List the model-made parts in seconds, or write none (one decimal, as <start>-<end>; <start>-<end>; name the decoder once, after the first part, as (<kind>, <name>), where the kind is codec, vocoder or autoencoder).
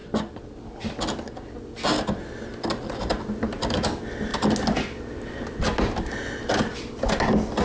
none